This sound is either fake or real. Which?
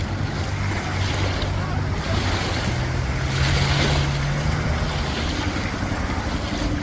real